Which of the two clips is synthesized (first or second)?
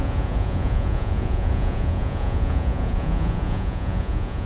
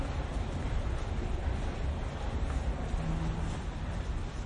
first